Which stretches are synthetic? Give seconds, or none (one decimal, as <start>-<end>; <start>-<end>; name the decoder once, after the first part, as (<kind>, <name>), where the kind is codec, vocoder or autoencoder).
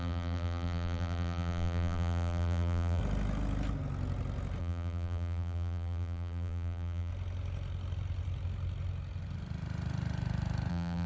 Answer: 0.0-3.0 (vocoder, BigVGAN v2); 4.6-7.1; 10.7-11.1